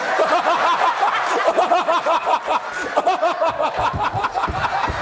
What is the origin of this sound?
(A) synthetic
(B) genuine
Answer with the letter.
B